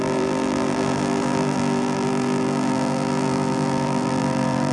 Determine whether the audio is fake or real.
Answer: fake